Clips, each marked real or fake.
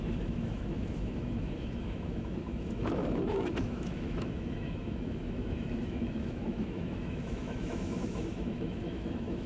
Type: fake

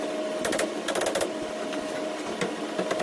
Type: real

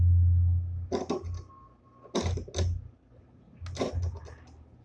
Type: real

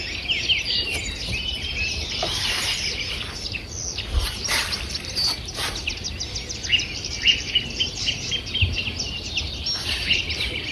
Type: real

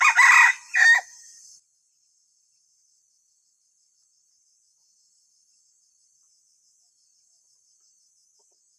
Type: real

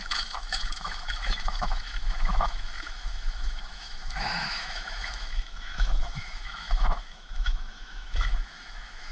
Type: fake